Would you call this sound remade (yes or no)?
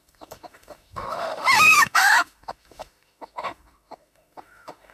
yes